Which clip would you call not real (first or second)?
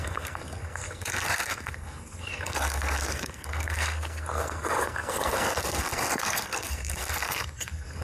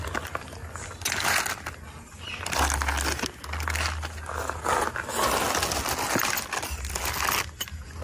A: first